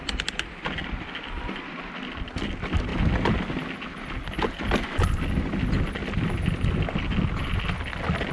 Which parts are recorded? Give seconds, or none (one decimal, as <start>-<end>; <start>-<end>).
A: 0.0-8.3

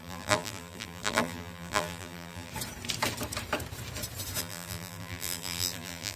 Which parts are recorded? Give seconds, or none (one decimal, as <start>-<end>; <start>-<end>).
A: 2.5-4.4

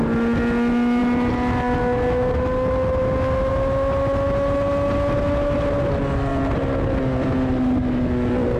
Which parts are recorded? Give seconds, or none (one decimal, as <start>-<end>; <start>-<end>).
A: 0.0-8.6